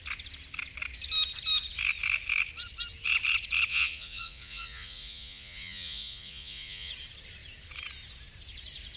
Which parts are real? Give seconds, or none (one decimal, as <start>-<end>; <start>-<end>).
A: 0.0-3.7; 6.9-9.0